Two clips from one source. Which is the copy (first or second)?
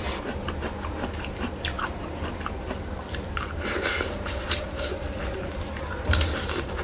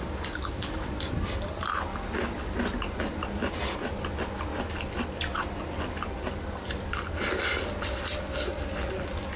first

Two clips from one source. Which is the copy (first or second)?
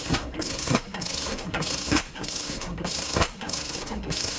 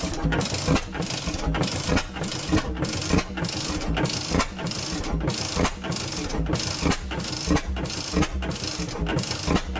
first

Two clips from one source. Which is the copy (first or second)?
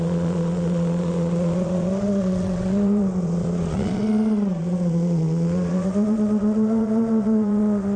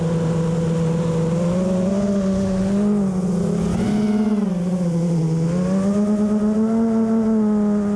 first